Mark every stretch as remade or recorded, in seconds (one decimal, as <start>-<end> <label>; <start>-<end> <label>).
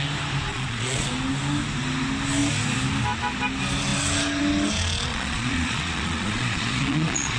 0.0-0.5 recorded; 0.5-1.1 remade; 1.1-5.1 recorded; 5.1-7.4 remade